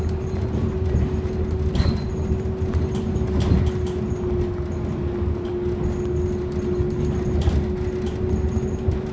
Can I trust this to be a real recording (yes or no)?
yes